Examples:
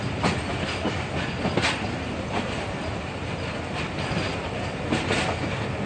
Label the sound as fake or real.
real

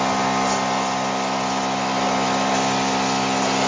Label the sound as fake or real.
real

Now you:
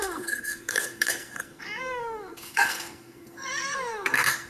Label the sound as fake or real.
fake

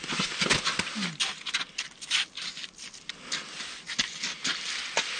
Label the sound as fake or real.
real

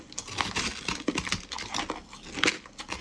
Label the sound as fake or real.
real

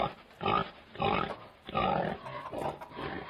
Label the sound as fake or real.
real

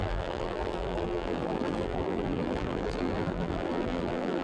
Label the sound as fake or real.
fake